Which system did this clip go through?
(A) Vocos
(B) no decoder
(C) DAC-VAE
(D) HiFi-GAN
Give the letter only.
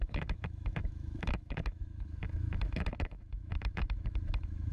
C